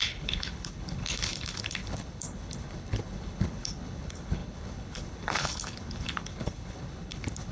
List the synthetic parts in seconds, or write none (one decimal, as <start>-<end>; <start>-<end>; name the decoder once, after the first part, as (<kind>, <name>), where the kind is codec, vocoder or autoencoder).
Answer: 0.0-7.5 (codec, HILCodec)